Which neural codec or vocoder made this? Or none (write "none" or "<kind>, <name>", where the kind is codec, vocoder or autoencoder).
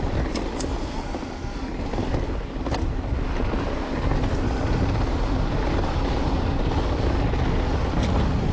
none